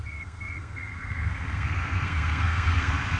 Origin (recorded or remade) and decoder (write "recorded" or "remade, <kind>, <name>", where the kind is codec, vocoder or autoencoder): remade, codec, SNAC